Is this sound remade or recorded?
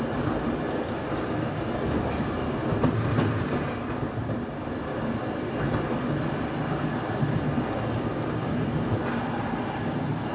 recorded